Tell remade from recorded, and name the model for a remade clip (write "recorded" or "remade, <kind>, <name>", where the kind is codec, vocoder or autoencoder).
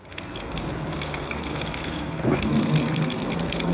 remade, codec, SNAC